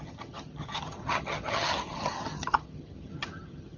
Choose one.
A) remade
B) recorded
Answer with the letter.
A